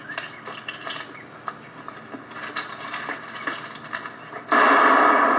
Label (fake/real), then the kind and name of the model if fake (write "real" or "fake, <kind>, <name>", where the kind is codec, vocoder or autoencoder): real